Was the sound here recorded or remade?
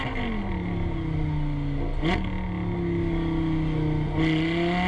recorded